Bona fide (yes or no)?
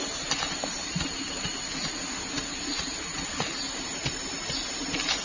yes